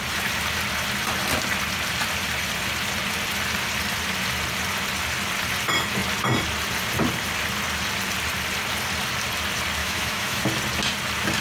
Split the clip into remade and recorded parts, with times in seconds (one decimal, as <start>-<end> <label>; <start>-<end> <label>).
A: 0.0-9.8 recorded; 9.8-10.4 remade; 10.4-11.4 recorded